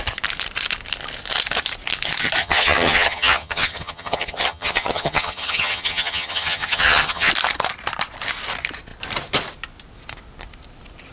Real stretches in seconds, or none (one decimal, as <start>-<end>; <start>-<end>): 0.0-2.4; 7.3-11.1